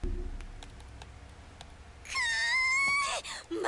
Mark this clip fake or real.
real